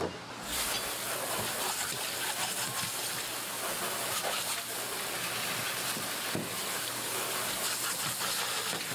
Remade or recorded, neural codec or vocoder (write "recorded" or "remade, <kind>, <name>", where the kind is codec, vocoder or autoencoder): recorded